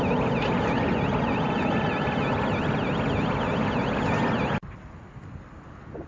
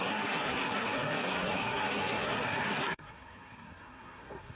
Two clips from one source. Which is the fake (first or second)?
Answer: second